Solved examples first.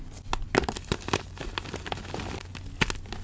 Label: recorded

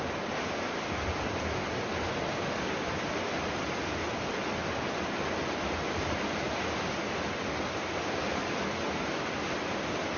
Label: recorded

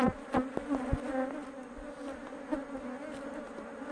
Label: recorded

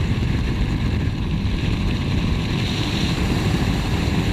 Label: remade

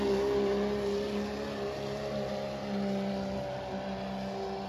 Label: recorded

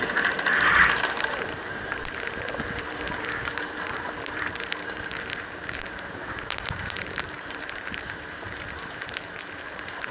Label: remade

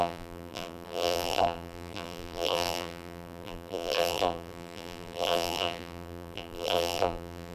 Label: remade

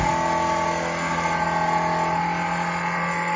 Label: recorded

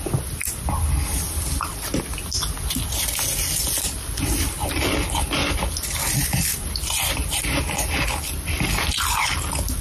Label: recorded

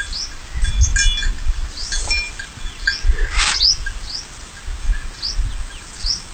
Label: recorded